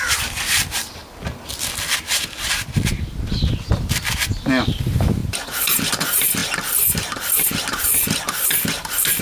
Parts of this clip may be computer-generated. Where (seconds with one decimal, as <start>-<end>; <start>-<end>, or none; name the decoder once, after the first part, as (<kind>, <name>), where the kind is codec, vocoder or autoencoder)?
0.0-1.0 (vocoder, BigVGAN v2); 4.8-6.4; 7.8-9.2